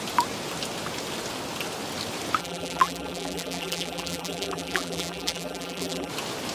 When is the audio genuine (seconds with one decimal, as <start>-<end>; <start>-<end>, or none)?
0.0-2.4; 6.1-6.5